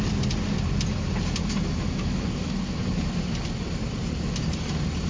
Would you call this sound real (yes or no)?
yes